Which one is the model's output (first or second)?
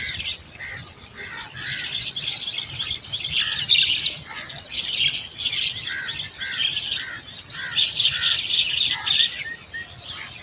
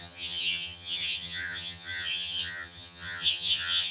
second